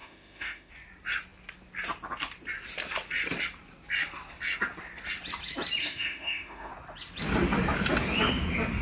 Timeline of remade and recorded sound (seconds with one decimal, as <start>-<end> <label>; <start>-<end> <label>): 0.0-0.7 remade; 0.7-5.8 recorded; 5.8-6.7 remade; 6.7-8.8 recorded